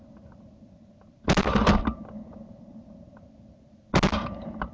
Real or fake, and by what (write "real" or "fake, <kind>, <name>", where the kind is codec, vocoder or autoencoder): real